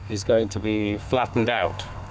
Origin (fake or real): fake